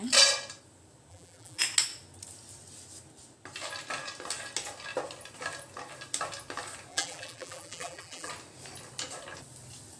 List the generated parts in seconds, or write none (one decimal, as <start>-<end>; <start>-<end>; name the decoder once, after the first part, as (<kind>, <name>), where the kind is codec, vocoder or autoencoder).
1.1-1.6 (vocoder, BigVGAN v2); 6.9-8.3